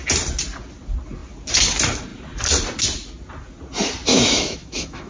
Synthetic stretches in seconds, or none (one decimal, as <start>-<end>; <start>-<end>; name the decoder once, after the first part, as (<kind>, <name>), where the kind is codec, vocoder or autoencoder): 4.1-5.1 (autoencoder, DAC-VAE)